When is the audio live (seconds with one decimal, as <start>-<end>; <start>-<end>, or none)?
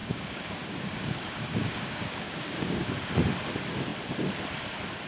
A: 3.1-5.1